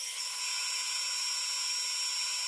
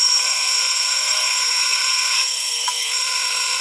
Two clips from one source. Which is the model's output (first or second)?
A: second